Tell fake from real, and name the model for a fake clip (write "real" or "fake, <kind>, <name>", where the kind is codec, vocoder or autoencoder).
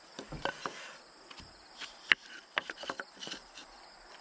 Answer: real